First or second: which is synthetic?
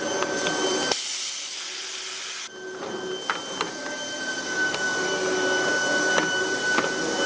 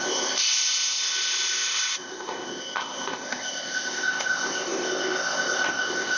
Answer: second